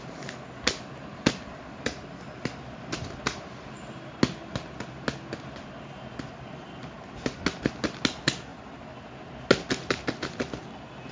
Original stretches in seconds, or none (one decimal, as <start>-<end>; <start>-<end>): 0.0-11.1